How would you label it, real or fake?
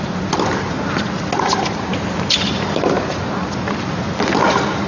real